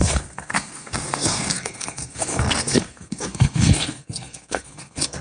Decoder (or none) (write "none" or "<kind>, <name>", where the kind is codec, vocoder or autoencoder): codec, SNAC